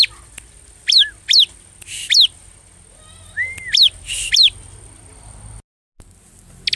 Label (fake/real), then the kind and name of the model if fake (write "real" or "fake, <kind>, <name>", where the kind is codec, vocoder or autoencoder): real